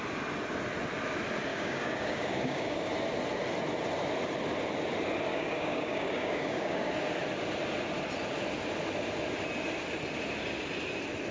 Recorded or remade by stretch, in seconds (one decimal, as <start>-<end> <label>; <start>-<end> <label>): 0.0-1.5 recorded; 1.5-2.9 remade; 2.9-5.3 recorded; 5.3-6.9 remade; 6.9-11.3 recorded